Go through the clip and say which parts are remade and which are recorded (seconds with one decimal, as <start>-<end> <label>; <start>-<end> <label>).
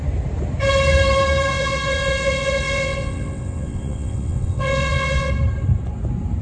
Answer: 0.0-1.5 recorded; 1.5-5.3 remade; 5.3-6.4 recorded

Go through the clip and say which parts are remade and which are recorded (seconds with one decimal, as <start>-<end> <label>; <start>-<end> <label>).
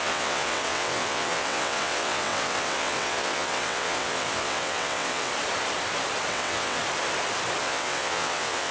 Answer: 0.0-5.3 remade; 5.3-6.3 recorded; 6.3-6.8 remade; 6.8-7.6 recorded; 7.6-8.7 remade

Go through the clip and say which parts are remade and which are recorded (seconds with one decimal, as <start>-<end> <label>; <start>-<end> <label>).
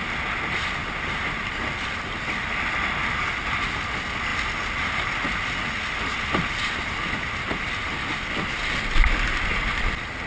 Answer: 0.0-10.3 recorded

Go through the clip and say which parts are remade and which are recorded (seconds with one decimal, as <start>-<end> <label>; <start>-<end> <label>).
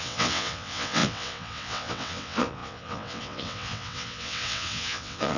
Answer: 0.0-5.4 remade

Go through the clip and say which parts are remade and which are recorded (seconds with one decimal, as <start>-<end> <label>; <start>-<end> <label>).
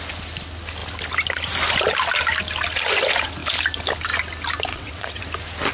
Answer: 0.0-4.7 recorded; 4.7-5.2 remade; 5.2-5.7 recorded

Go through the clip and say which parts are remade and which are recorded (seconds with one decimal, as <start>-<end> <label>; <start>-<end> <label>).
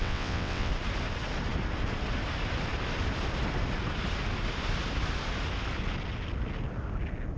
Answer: 0.0-0.7 remade; 0.7-7.4 recorded